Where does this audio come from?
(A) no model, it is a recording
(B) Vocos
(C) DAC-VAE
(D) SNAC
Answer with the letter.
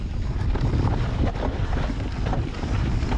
A